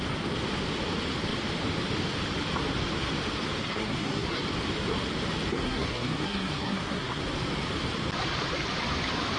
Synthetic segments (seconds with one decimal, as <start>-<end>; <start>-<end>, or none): 3.6-4.4; 5.5-7.2